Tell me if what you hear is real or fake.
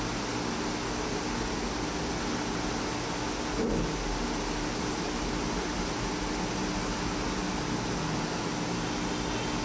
real